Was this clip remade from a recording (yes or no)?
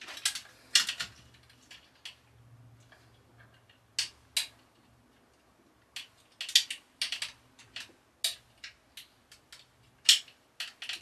no